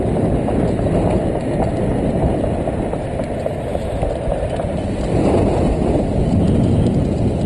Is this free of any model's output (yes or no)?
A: yes